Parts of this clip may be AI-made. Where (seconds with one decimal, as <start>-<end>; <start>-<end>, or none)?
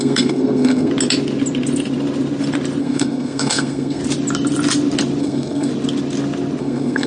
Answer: 0.0-0.9; 2.8-4.0; 5.2-5.7; 6.6-7.1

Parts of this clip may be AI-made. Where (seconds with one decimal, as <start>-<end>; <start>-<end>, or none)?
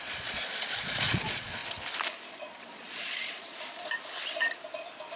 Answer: 0.0-1.6; 2.3-3.5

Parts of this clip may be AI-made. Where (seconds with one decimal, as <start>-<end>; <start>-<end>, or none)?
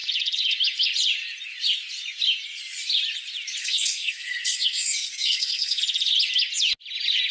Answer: 3.6-5.8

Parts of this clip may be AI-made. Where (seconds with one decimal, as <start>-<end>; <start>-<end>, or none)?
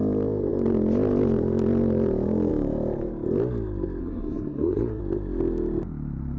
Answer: 4.0-5.0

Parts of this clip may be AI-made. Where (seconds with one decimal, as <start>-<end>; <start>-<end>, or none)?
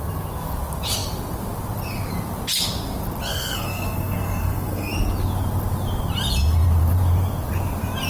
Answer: 3.3-4.9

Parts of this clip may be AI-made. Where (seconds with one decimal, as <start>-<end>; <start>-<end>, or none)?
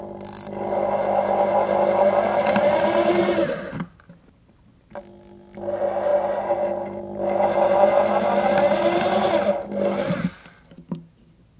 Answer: none